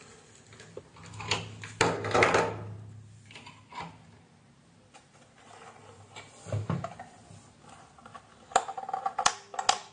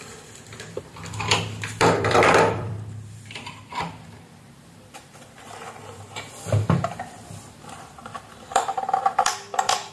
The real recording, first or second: first